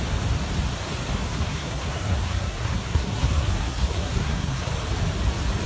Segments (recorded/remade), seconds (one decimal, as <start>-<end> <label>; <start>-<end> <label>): 0.0-1.3 recorded; 1.3-4.7 remade; 4.7-5.7 recorded